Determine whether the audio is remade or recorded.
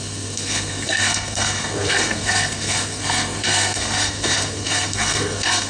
remade